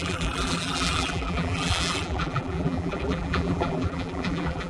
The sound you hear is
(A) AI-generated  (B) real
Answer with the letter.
A